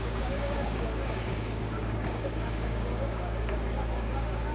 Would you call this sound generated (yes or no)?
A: yes